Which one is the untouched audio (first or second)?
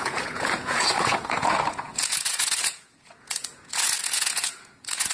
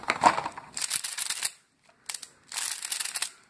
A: second